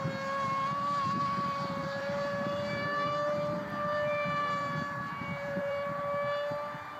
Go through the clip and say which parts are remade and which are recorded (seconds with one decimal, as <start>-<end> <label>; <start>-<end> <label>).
0.0-1.8 recorded; 1.8-6.0 remade; 6.0-7.0 recorded